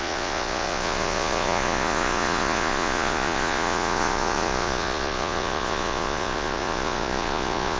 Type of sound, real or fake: fake